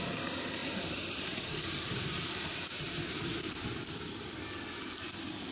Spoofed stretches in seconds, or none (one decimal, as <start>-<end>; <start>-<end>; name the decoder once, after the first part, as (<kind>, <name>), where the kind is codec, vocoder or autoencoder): 0.6-3.8 (vocoder, BigVGAN v2)